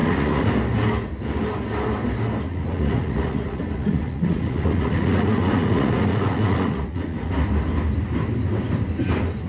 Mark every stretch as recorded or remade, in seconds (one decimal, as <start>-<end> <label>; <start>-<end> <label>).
0.0-0.5 remade; 0.5-2.5 recorded; 2.5-7.3 remade; 7.3-9.5 recorded